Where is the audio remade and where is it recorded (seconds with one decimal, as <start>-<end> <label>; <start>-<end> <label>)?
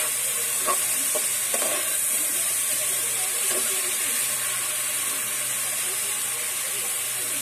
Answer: 0.0-1.7 recorded; 1.7-4.0 remade; 4.0-7.4 recorded